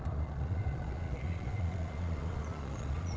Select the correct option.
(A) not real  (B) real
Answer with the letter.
A